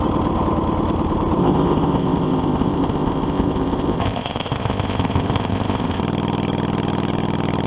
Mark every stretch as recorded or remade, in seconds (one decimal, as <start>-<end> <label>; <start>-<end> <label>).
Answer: 0.0-1.4 recorded; 1.4-6.0 remade; 6.0-7.7 recorded